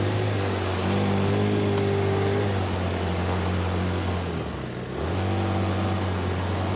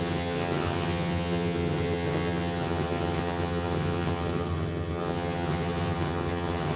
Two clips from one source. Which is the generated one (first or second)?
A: second